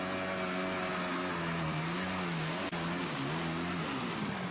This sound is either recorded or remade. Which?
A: recorded